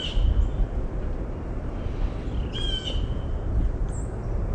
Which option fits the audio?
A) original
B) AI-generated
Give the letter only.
A